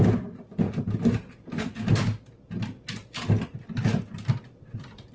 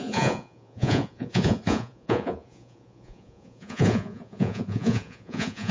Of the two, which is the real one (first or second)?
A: first